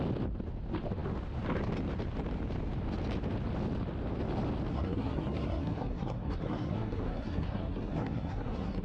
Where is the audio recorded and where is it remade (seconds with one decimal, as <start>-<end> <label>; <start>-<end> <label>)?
0.0-4.7 recorded; 4.7-8.8 remade